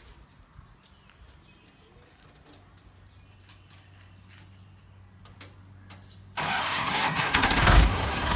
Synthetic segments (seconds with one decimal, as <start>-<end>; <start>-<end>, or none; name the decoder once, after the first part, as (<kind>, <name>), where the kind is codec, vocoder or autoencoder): 6.6-8.4 (codec, SNAC)